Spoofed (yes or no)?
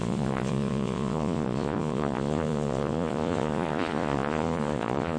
yes